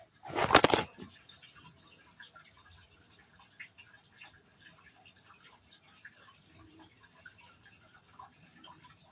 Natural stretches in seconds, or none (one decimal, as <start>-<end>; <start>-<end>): 0.0-9.1